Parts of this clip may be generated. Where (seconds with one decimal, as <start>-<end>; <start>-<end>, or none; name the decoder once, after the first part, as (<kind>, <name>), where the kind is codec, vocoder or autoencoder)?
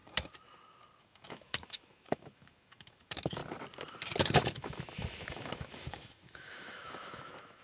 1.0-3.4 (autoencoder, DAC-VAE); 4.5-7.6